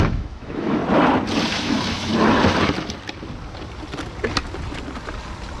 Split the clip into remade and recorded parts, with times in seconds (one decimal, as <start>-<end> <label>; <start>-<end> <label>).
0.0-0.8 remade; 0.8-1.5 recorded; 1.5-2.1 remade; 2.1-5.6 recorded